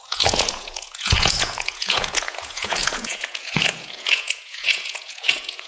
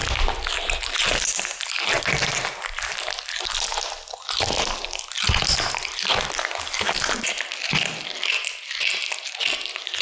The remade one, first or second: first